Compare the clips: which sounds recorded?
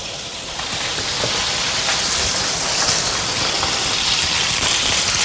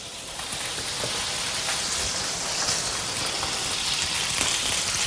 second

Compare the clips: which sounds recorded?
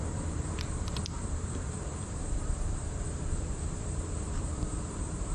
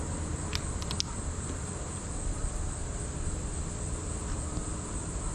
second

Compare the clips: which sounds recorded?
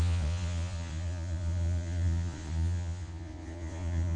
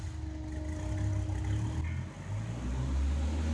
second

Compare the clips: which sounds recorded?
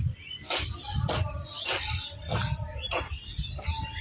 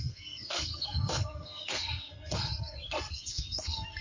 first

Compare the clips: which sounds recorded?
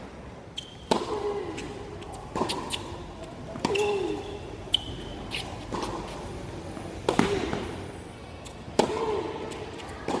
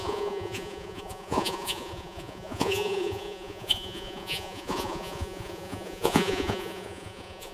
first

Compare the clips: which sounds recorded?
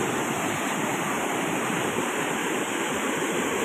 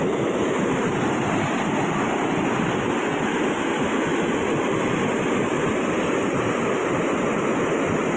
second